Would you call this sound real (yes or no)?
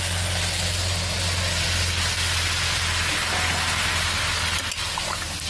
yes